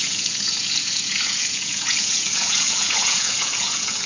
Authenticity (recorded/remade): remade